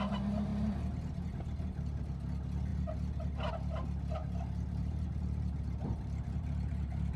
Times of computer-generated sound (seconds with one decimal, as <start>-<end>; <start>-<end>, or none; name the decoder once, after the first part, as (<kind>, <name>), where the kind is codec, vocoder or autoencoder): 4.2-7.2 (vocoder, BigVGAN v2)